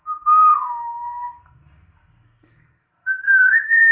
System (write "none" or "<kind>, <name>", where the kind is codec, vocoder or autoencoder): codec, SNAC